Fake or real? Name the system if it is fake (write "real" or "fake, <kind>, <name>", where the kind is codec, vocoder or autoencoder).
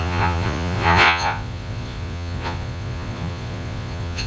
fake, vocoder, Vocos